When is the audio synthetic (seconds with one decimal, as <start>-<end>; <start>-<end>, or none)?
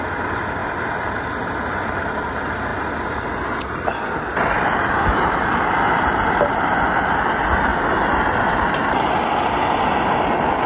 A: none